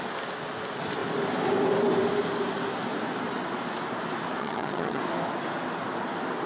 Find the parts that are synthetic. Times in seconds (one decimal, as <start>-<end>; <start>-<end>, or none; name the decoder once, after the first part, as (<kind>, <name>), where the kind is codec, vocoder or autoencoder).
4.4-5.0 (vocoder, HiFi-GAN)